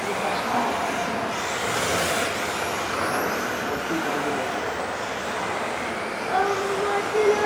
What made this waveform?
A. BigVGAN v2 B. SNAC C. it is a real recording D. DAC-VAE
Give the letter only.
C